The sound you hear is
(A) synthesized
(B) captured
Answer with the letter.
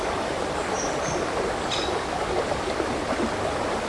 B